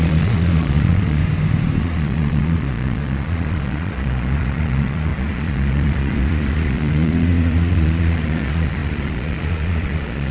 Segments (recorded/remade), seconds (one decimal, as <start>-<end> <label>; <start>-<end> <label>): 0.0-1.2 remade; 1.2-1.8 recorded; 1.8-10.3 remade